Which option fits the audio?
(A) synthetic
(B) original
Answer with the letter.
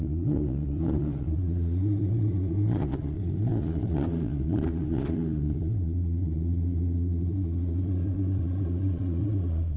A